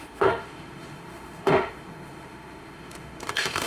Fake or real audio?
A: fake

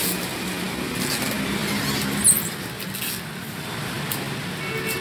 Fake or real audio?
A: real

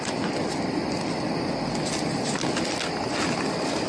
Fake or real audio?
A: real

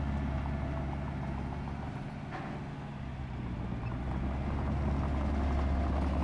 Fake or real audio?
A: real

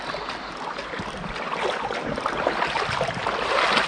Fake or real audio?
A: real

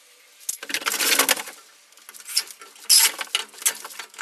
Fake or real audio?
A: real